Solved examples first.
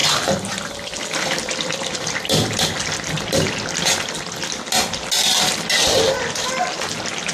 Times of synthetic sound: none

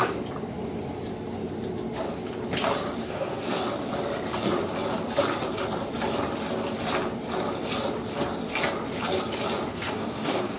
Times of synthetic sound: 3.0-3.6 (codec, SNAC); 9.7-10.6

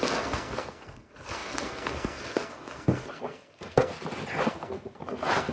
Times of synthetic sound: 0.0-3.9 (codec, SNAC); 4.4-5.5

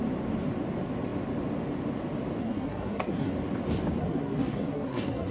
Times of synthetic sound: 2.4-3.3 (codec, SNAC); 4.0-5.3

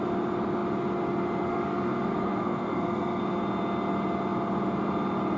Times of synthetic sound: 1.5-3.2 (codec, SNAC)

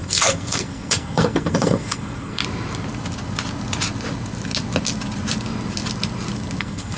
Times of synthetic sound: 0.0-2.4 (codec, SNAC); 6.6-7.0

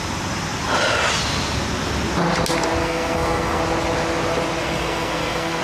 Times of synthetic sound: 2.8-3.6 (codec, SNAC); 4.6-5.6